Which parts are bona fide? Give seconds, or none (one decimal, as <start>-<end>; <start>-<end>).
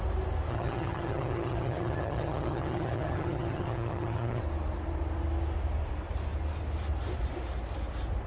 0.0-0.5; 4.4-8.3